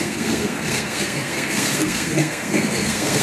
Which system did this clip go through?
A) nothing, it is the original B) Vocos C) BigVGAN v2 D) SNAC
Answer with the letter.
D